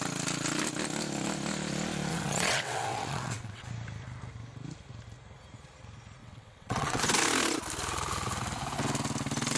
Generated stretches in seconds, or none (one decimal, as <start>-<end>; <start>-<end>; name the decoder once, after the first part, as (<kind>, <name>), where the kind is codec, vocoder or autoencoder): 2.1-3.7 (vocoder, WaveNeXt); 6.2-7.0

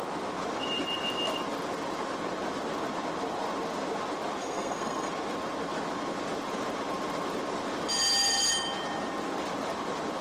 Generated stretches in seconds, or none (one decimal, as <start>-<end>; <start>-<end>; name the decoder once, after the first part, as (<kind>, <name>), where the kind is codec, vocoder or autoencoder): 4.4-5.1 (codec, SNAC)

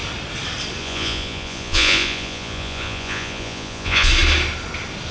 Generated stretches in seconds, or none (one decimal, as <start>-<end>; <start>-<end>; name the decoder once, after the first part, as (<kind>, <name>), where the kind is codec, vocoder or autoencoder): 0.8-4.1 (vocoder, Vocos)